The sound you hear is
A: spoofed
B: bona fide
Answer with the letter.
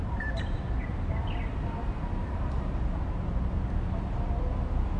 B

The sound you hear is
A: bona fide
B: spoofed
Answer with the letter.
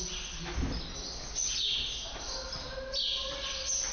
A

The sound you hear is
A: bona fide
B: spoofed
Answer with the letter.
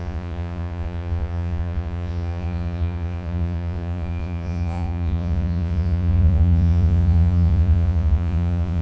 B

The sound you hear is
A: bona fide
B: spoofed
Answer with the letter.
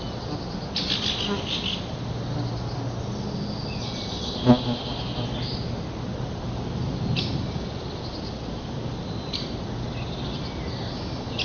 A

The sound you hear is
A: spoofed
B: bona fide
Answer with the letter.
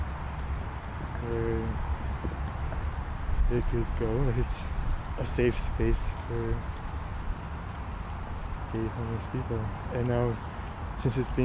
B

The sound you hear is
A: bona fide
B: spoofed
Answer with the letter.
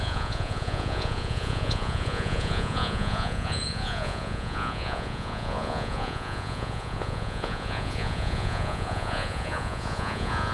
B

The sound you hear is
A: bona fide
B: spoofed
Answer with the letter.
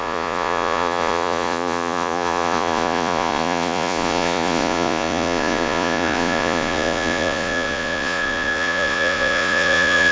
B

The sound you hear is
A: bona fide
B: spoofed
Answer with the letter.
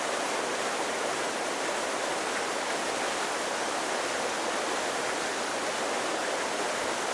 A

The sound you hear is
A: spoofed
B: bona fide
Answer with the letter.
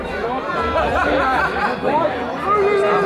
B